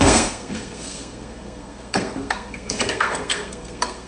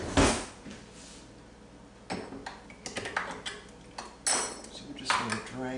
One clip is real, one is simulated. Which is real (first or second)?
second